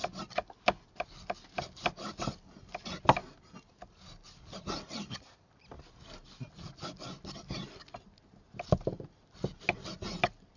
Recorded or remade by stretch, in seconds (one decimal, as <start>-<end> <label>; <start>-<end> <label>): 0.0-10.6 recorded